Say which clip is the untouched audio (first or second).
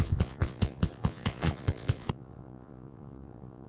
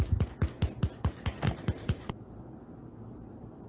second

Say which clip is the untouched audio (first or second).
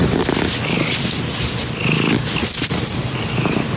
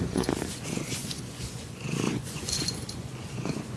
first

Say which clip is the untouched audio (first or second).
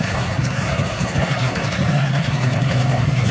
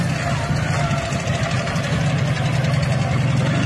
second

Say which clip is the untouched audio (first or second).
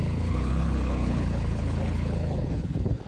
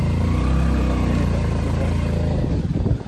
second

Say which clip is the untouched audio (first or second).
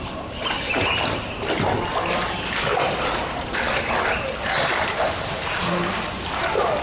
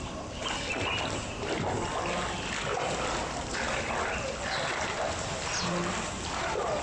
second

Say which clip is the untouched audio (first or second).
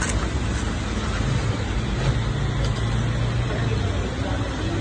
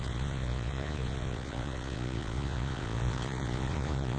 first